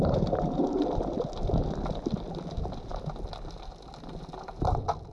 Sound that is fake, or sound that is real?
real